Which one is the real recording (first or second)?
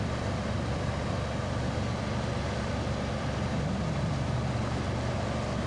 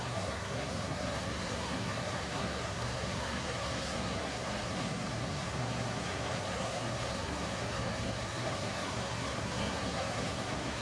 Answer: first